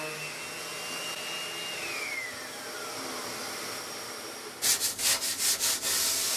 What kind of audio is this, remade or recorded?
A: recorded